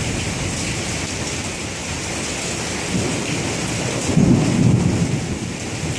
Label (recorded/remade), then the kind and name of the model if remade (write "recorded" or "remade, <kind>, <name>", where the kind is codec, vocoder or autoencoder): recorded